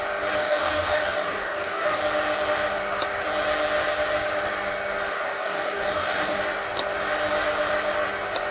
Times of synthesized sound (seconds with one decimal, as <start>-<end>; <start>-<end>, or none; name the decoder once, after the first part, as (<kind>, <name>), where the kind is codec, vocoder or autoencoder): 0.4-2.0 (codec, DAC); 5.1-6.4